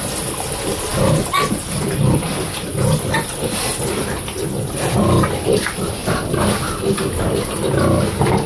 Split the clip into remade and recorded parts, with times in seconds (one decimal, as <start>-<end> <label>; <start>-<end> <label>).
0.0-8.5 recorded